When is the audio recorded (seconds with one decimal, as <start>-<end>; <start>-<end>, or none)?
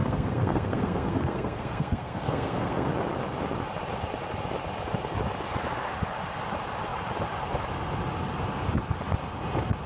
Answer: 2.9-9.9